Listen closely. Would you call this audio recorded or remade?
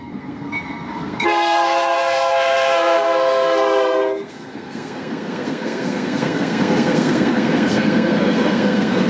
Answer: remade